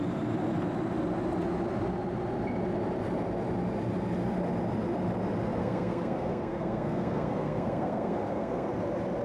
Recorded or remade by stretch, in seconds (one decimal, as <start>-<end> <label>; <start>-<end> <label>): 0.0-5.6 recorded; 5.6-8.7 remade; 8.7-9.2 recorded